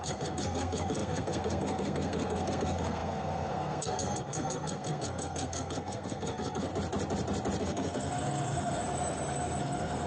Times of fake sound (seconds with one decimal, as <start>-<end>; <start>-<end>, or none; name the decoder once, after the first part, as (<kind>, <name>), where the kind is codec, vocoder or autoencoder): 0.0-6.7 (codec, SNAC); 7.6-8.8; 9.6-10.1